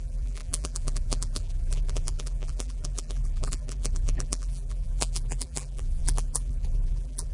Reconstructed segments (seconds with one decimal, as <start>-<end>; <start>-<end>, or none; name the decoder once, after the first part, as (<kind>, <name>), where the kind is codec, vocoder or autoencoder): 0.0-7.3 (vocoder, BigVGAN v2)